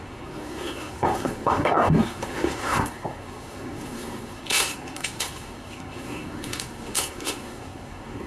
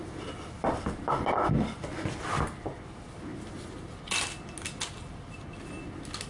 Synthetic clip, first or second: first